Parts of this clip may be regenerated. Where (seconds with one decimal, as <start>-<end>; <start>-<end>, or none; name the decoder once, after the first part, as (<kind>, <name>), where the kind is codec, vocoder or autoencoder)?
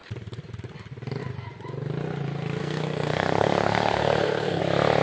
2.6-4.6 (codec, SNAC)